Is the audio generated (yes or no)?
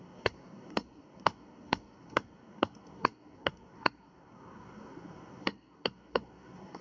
yes